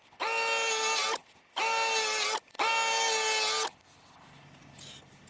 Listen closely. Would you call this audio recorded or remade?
recorded